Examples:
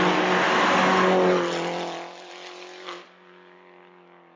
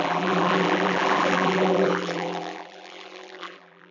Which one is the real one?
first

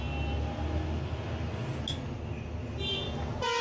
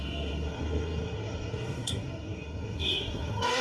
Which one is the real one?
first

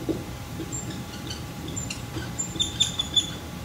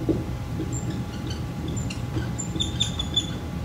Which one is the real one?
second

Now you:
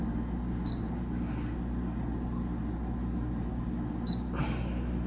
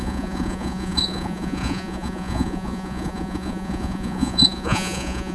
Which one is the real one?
first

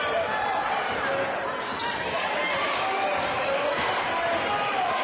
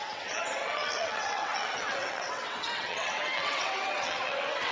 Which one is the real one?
first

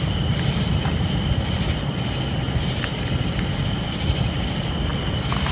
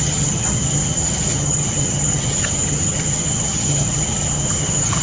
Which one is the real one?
first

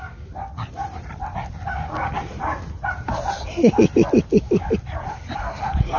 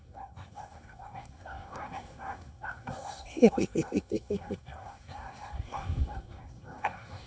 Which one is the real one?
first